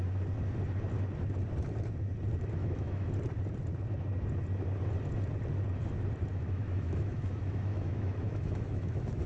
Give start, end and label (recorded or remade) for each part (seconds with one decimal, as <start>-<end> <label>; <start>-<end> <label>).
0.0-2.6 recorded; 2.6-3.1 remade; 3.1-6.3 recorded; 6.3-9.3 remade